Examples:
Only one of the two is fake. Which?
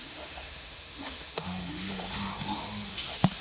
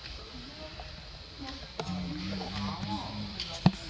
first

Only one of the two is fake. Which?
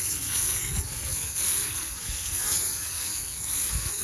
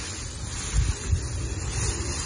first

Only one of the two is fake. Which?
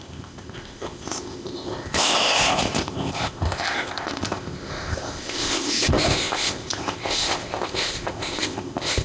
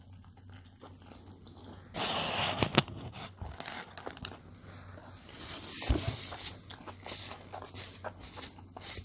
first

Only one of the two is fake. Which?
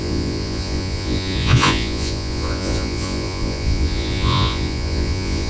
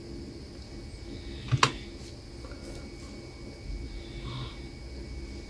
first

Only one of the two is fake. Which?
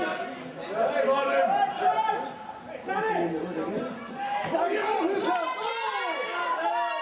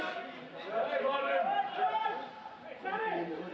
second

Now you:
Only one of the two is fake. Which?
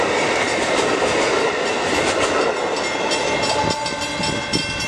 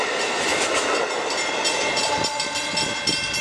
second